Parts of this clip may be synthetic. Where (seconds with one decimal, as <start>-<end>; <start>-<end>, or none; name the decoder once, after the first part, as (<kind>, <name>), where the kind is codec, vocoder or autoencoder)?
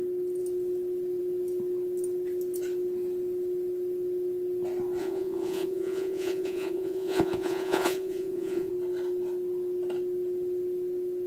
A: 5.0-8.7 (vocoder, Vocos)